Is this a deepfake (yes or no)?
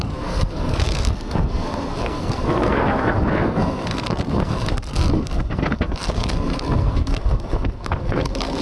yes